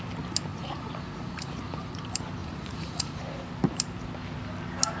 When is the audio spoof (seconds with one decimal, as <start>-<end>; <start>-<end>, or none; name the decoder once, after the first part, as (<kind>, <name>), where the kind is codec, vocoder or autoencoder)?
0.5-2.0 (vocoder, Vocos); 2.4-3.2

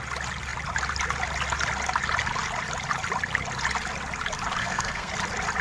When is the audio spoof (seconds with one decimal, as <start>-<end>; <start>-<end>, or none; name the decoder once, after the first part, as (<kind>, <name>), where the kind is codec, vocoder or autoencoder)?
4.6-5.1 (codec, SNAC)

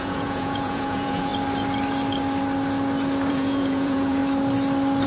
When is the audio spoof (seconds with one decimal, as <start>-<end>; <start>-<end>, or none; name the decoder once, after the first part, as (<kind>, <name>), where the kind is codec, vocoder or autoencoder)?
0.0-1.3 (vocoder, Vocos); 3.3-4.2

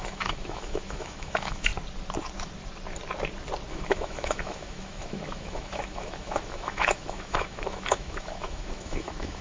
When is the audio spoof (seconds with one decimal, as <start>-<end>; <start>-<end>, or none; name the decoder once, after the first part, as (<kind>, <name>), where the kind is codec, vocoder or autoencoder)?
0.0-1.7 (autoencoder, DAC-VAE); 3.7-9.4

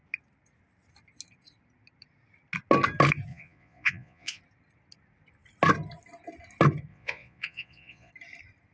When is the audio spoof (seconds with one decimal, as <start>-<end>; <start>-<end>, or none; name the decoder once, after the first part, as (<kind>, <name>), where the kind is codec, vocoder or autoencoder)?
3.3-4.4 (vocoder, Vocos); 6.9-8.1